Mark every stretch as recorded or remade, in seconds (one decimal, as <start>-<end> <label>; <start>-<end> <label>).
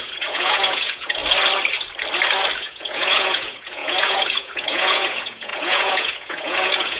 0.0-1.2 remade; 1.2-2.6 recorded; 2.6-7.0 remade